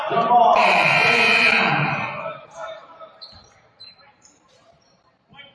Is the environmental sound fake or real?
fake